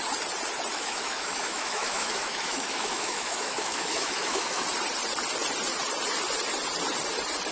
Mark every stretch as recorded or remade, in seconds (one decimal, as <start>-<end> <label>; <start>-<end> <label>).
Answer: 0.0-0.7 recorded; 0.7-4.6 remade; 4.6-7.5 recorded